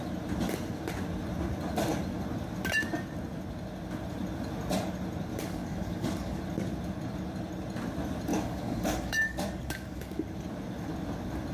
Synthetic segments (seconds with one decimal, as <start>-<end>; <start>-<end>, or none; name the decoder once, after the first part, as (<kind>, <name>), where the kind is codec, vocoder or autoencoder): 5.3-6.4 (codec, DAC); 8.3-10.2

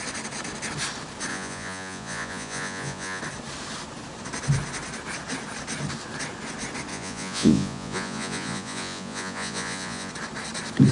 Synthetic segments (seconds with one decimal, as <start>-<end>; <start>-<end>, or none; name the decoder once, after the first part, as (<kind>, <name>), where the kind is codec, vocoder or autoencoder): 1.3-3.2 (vocoder, Vocos); 6.9-10.1

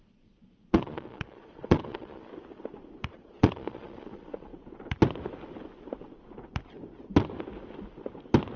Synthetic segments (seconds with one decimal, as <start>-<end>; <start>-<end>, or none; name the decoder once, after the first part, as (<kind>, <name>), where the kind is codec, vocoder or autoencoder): 0.0-2.3 (vocoder, Vocos); 3.1-4.5

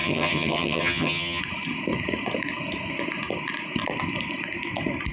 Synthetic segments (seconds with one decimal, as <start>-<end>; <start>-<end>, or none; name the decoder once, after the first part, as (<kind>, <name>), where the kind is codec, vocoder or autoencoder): 0.0-1.4 (vocoder, HiFi-GAN)

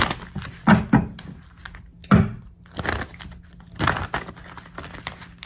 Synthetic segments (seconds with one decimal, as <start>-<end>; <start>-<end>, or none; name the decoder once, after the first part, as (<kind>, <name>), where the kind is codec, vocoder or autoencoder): none

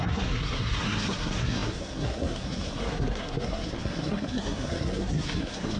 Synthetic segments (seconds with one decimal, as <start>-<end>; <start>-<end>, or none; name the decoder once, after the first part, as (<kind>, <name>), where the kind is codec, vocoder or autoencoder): 0.0-5.8 (codec, SNAC)